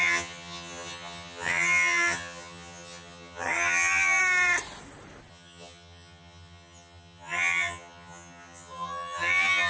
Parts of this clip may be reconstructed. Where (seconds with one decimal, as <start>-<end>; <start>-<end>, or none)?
0.0-4.2; 5.3-9.7